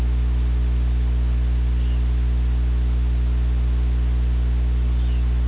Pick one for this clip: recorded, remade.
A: recorded